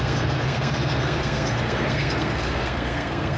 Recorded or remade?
remade